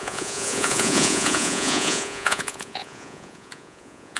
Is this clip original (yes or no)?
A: no